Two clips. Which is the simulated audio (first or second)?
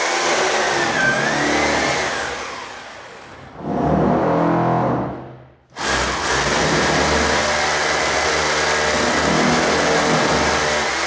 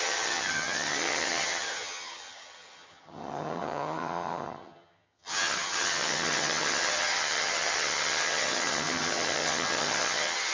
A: second